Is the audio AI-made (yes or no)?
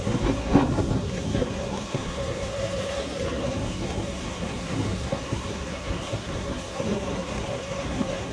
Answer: yes